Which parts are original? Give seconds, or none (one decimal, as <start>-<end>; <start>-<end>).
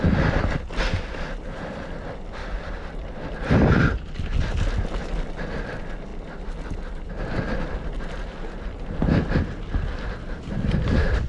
0.0-2.4; 4.1-11.3